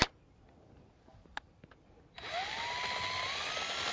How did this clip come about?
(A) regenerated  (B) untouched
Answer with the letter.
B